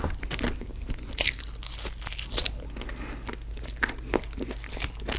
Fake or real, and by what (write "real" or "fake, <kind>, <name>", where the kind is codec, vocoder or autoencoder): real